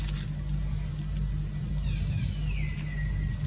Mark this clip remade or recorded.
recorded